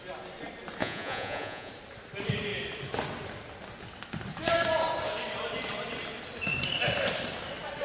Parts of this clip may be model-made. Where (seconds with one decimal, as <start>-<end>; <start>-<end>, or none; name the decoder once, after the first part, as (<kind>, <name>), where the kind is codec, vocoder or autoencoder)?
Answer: 0.8-1.7 (vocoder, Vocos)